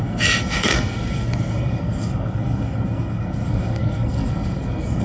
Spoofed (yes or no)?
yes